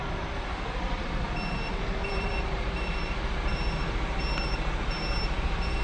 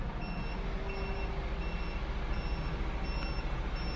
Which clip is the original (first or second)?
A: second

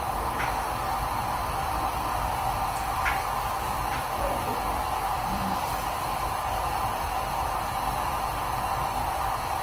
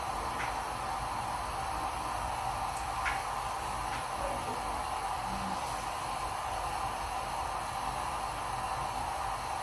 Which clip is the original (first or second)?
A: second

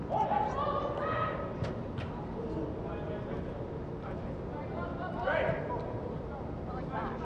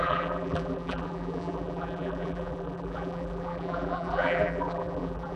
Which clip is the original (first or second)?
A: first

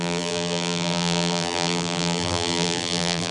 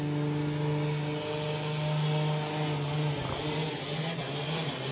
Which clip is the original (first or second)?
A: second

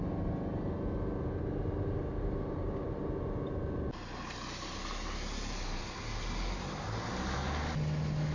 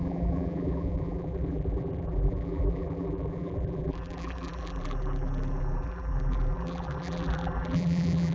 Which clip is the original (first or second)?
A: first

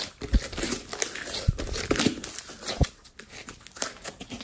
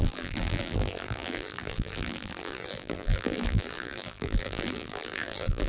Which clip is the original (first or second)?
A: first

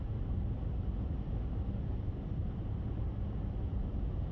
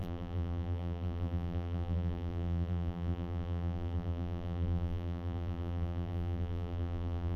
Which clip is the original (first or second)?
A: first